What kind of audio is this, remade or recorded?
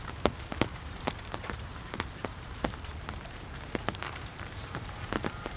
remade